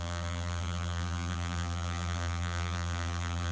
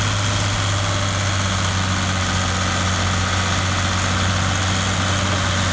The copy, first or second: first